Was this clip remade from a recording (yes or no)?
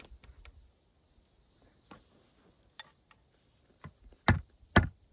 no